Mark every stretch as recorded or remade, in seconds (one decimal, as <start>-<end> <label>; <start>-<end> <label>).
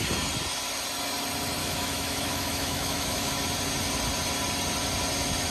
0.0-1.6 recorded; 1.6-3.3 remade; 3.3-5.5 recorded